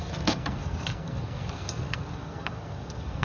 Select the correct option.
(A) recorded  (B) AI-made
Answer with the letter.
B